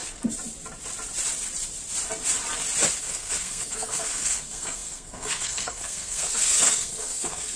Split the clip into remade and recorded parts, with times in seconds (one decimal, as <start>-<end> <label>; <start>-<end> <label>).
0.0-3.0 recorded; 3.0-7.6 remade